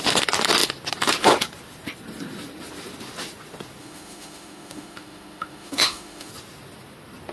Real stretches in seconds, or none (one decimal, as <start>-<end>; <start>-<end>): 0.0-3.8; 6.3-7.3